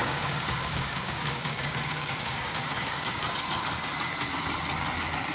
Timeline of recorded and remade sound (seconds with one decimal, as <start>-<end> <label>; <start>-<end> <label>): 0.0-3.2 remade; 3.2-5.3 recorded

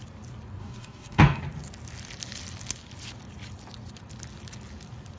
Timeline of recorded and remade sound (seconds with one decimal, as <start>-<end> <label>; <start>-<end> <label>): 0.0-0.6 recorded; 0.6-1.4 remade; 1.4-5.2 recorded